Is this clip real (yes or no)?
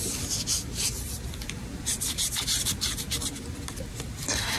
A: no